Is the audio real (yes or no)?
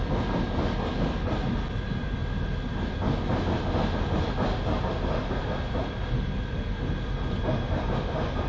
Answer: yes